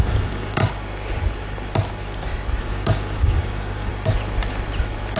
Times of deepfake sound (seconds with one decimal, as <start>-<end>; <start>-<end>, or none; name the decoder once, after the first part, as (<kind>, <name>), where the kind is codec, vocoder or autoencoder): 0.0-0.6 (codec, DAC); 2.6-3.9